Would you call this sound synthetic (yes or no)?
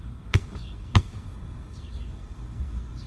yes